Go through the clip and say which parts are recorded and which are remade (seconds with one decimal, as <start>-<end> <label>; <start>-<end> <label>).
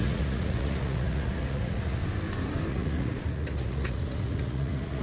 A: 0.0-2.0 remade; 2.0-2.7 recorded; 2.7-5.0 remade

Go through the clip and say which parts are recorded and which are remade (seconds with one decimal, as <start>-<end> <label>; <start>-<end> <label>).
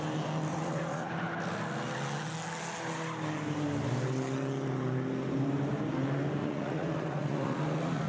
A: 0.0-0.5 recorded; 0.5-1.1 remade; 1.1-6.4 recorded; 6.4-8.1 remade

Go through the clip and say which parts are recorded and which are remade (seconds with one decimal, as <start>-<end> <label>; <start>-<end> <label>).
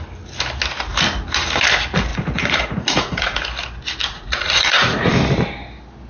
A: 0.0-2.1 recorded; 2.1-3.4 remade; 3.4-4.0 recorded; 4.0-5.1 remade; 5.1-6.1 recorded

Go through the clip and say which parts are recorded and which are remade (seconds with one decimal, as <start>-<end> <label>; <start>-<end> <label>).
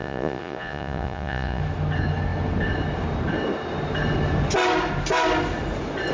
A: 0.0-1.6 remade; 1.6-6.1 recorded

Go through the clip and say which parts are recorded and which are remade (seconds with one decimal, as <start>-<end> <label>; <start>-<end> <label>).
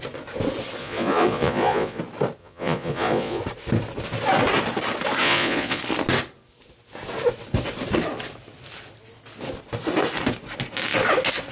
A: 0.0-0.8 recorded; 0.8-2.0 remade; 2.0-2.4 recorded; 2.4-3.4 remade; 3.4-5.2 recorded; 5.2-5.8 remade; 5.8-11.5 recorded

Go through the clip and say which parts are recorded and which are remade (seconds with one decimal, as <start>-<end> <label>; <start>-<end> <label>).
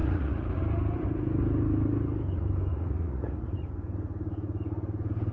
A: 0.0-0.6 remade; 0.6-2.7 recorded; 2.7-3.7 remade; 3.7-5.3 recorded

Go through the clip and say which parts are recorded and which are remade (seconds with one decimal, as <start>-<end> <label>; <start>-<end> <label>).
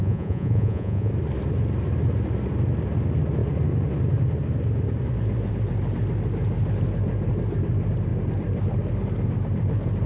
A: 0.0-1.1 remade; 1.1-10.1 recorded